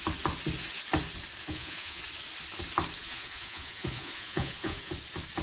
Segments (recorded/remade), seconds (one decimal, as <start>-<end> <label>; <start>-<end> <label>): 0.0-1.4 recorded; 1.4-2.0 remade; 2.0-3.0 recorded; 3.0-4.9 remade; 4.9-5.4 recorded

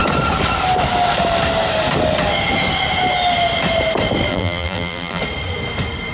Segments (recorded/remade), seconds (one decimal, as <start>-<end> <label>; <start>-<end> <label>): 0.0-4.3 recorded; 4.3-5.2 remade; 5.2-6.1 recorded

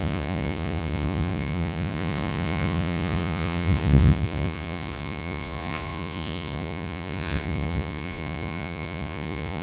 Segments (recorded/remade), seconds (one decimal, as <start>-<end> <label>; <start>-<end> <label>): 0.0-9.6 remade

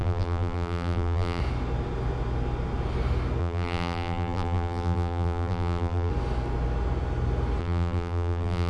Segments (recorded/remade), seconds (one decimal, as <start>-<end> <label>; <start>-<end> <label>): 0.0-1.4 remade; 1.4-3.4 recorded; 3.4-6.1 remade; 6.1-7.6 recorded; 7.6-8.7 remade

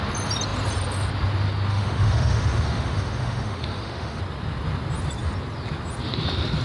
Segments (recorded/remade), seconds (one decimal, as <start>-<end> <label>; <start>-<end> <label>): 0.0-1.7 recorded; 1.7-4.2 remade; 4.2-6.6 recorded